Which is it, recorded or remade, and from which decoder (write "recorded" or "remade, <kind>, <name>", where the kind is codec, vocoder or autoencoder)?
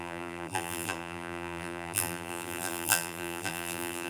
remade, vocoder, BigVGAN v2